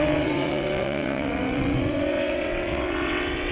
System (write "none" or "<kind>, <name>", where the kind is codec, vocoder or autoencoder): vocoder, WaveNeXt